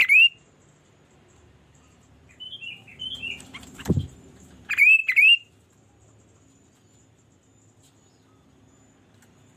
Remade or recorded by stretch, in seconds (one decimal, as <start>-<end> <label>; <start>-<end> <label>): 0.0-1.1 recorded; 1.1-2.9 remade; 2.9-4.1 recorded; 4.1-5.0 remade; 5.0-9.2 recorded; 9.2-9.6 remade